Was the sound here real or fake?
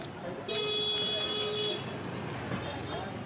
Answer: real